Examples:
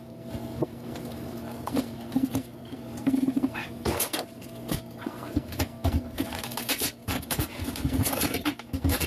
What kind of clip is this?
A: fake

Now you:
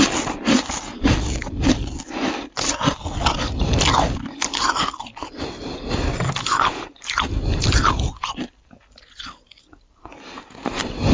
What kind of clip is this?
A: real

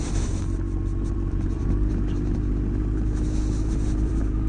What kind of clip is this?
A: real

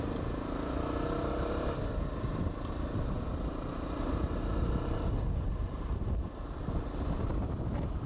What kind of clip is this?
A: real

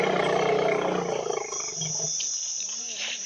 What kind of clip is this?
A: fake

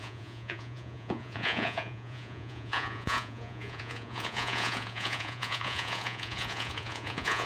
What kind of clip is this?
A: fake